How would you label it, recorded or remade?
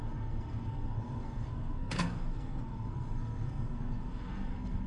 remade